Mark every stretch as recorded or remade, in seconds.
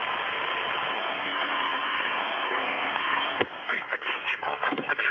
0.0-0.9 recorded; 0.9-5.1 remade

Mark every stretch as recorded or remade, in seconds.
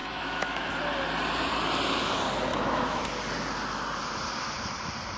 0.0-0.7 remade; 0.7-2.5 recorded; 2.5-3.0 remade; 3.0-5.2 recorded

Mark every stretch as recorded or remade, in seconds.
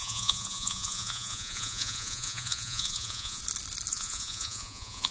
0.0-3.4 remade; 3.4-3.9 recorded; 3.9-5.1 remade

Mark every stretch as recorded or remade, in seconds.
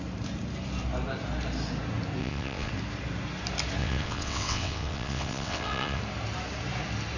0.0-2.2 recorded; 2.2-2.7 remade; 2.7-3.8 recorded; 3.8-6.0 remade; 6.0-7.2 recorded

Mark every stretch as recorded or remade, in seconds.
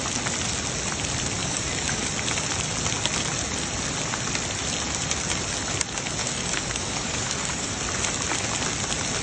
0.0-1.4 recorded; 1.4-2.0 remade; 2.0-6.2 recorded; 6.2-7.7 remade; 7.7-9.2 recorded